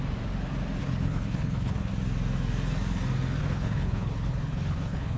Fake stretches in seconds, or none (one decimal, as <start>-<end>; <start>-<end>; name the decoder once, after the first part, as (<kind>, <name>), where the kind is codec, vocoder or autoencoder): 0.8-1.9 (codec, HILCodec); 3.4-5.2

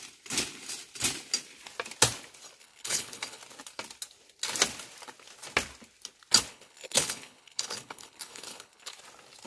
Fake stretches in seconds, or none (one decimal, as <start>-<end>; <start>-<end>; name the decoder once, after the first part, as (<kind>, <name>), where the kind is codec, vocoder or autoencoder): 2.6-3.4 (codec, HILCodec); 6.5-8.9